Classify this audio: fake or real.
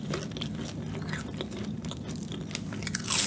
real